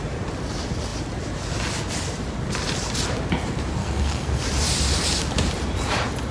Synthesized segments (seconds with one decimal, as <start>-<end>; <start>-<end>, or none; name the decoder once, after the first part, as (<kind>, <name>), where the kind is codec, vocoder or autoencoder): 3.8-4.4 (codec, SNAC)